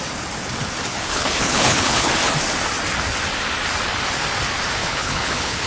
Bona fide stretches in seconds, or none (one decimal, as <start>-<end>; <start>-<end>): 0.0-0.9; 2.1-4.8